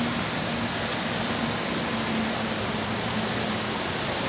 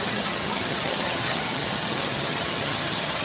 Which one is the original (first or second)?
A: first